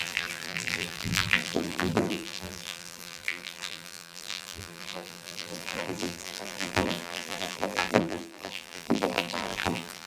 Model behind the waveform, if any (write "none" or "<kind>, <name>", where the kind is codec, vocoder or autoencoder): vocoder, BigVGAN v2